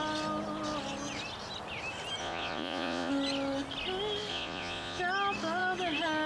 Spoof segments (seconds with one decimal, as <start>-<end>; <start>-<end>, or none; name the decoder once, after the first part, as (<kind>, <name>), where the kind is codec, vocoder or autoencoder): 2.2-3.1 (vocoder, Vocos); 4.3-5.0

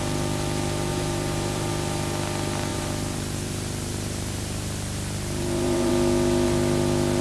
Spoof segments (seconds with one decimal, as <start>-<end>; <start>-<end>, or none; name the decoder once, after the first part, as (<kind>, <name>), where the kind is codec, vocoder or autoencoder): 0.9-1.7 (vocoder, BigVGAN v2); 2.7-5.9

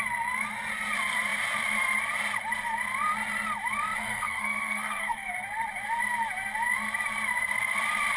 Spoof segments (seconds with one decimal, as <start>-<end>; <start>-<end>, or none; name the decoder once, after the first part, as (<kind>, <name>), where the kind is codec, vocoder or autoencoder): 4.0-5.3 (codec, SNAC)